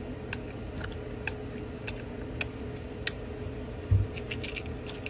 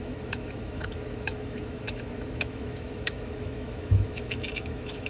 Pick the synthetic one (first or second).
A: second